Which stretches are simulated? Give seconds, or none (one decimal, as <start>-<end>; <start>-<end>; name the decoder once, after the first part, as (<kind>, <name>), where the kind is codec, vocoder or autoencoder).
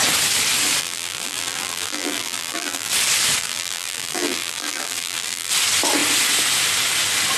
0.8-2.9 (vocoder, BigVGAN v2); 3.4-5.5